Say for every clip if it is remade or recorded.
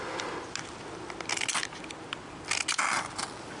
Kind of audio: recorded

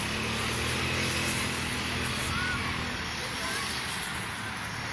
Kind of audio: recorded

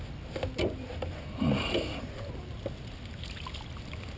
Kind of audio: recorded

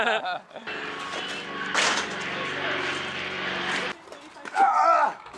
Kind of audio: recorded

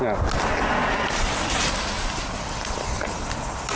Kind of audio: recorded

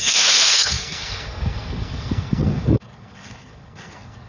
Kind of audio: remade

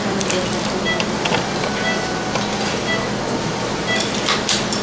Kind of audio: recorded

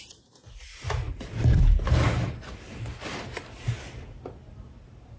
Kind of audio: recorded